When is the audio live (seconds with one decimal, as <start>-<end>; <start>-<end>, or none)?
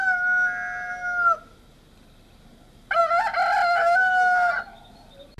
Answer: 0.0-5.4